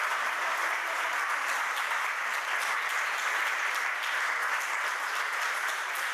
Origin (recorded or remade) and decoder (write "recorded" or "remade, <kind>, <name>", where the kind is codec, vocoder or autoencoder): recorded